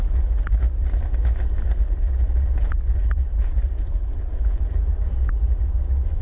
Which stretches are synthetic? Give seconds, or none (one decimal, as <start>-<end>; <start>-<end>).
3.3-4.6